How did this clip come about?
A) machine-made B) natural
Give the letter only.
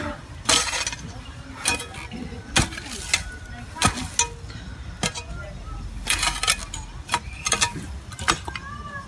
B